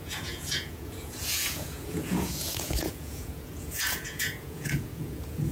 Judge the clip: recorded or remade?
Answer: remade